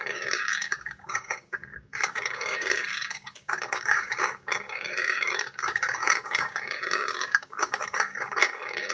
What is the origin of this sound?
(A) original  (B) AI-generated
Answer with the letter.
B